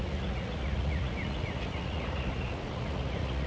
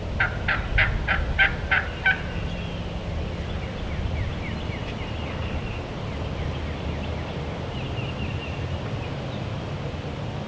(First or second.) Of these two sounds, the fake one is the first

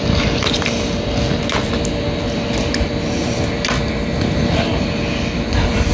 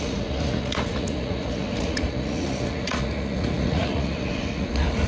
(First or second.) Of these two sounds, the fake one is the second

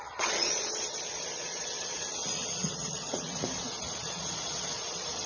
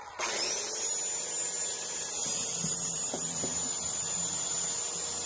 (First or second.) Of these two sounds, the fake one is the first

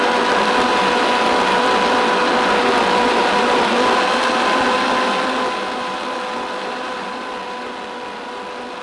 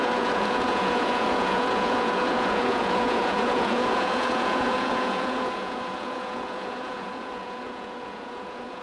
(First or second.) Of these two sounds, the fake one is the second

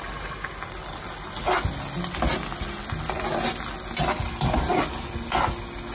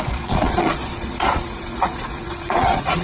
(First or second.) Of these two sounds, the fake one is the second